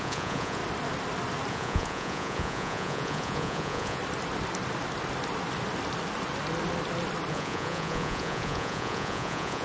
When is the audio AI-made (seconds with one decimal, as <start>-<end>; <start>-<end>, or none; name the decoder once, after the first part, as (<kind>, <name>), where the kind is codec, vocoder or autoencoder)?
0.0-0.6 (vocoder, Vocos); 1.5-4.0; 7.3-9.6